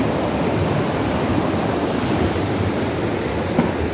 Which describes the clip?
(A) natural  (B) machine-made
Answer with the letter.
A